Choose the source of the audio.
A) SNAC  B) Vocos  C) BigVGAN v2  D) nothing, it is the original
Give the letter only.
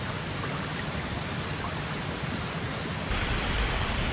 D